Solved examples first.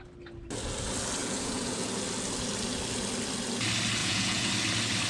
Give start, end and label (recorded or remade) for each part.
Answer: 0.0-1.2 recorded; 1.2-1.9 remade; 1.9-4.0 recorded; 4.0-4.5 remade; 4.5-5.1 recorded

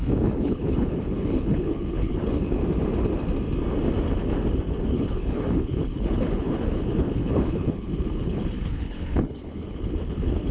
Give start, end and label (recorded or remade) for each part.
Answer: 0.0-2.6 remade; 2.6-4.7 recorded; 4.7-10.5 remade

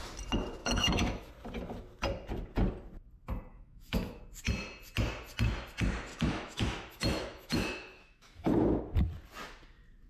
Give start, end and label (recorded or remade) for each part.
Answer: 0.0-0.6 recorded; 0.6-1.3 remade; 1.3-3.5 recorded; 3.5-4.2 remade; 4.2-6.1 recorded; 6.1-8.8 remade; 8.8-10.1 recorded

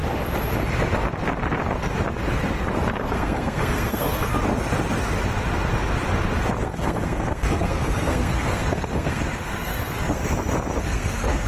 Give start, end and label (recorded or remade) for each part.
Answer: 0.0-2.9 recorded; 2.9-4.3 remade; 4.3-6.6 recorded; 6.6-10.2 remade; 10.2-10.8 recorded; 10.8-11.5 remade

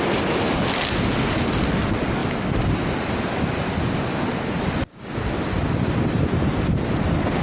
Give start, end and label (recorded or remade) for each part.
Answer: 0.0-7.4 recorded

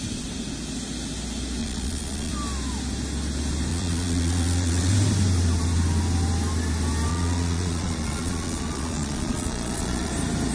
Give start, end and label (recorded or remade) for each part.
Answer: 0.0-1.6 recorded; 1.6-2.3 remade; 2.3-3.7 recorded; 3.7-4.9 remade; 4.9-7.1 recorded; 7.1-10.1 remade; 10.1-10.5 recorded

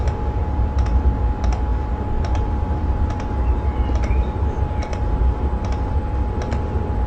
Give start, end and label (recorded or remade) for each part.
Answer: 0.0-0.4 recorded; 0.4-1.2 remade; 1.2-1.7 recorded; 1.7-6.0 remade; 6.0-7.1 recorded

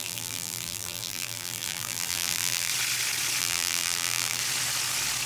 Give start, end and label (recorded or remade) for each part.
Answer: 0.0-2.7 remade; 2.7-3.4 recorded; 3.4-4.4 remade; 4.4-5.3 recorded